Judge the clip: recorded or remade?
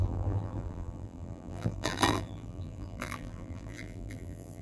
remade